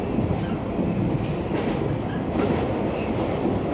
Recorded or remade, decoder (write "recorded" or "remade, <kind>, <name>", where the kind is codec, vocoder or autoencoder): recorded